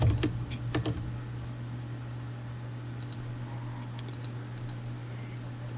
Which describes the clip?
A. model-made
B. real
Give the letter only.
B